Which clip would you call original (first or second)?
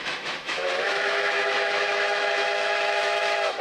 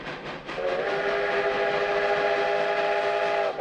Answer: second